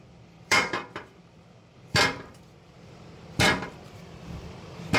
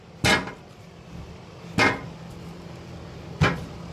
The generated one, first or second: first